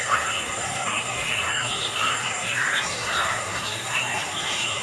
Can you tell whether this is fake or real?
fake